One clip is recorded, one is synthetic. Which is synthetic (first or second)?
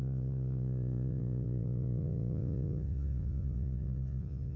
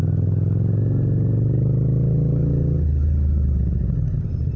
first